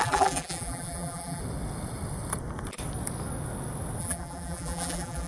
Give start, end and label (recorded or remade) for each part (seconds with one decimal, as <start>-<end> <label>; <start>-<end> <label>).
0.0-1.4 remade; 1.4-4.0 recorded; 4.0-5.3 remade